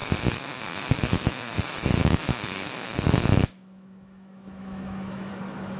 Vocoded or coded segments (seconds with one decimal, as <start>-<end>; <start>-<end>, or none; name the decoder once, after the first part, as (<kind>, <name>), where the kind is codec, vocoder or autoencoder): 0.0-1.6 (autoencoder, DAC-VAE); 2.0-5.3